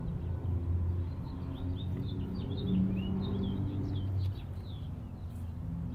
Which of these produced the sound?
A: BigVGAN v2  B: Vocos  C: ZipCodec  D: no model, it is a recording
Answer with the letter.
D